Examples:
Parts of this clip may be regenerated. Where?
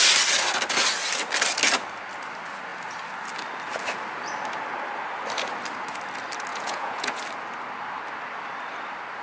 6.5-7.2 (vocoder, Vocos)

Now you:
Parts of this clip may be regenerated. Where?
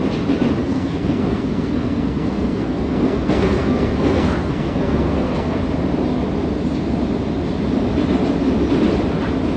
0.6-5.6 (codec, SNAC)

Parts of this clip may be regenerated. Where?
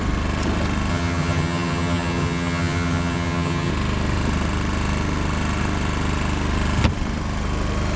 0.9-3.7 (vocoder, HiFi-GAN)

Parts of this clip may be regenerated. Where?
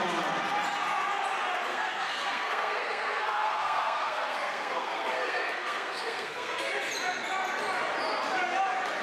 1.7-6.7 (codec, SNAC)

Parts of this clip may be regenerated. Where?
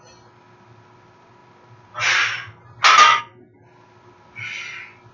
none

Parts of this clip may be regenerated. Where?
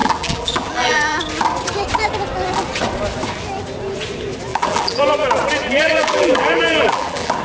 0.0-1.2 (vocoder, BigVGAN v2); 4.5-5.0; 5.6-7.4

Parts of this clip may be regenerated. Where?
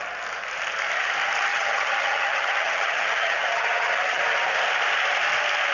1.5-4.2 (vocoder, HiFi-GAN)